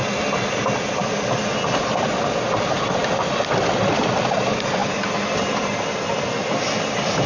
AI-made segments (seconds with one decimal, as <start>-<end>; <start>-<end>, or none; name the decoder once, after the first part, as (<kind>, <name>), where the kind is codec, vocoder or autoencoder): 4.8-7.3 (vocoder, BigVGAN v2)